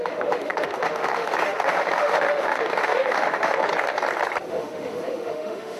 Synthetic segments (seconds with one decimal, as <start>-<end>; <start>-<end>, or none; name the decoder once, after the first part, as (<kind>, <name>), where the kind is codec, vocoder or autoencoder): 0.0-3.7 (autoencoder, DAC-VAE); 4.5-5.8